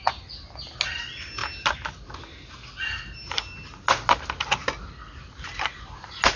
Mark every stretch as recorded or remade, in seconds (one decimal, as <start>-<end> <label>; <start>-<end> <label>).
0.0-6.4 recorded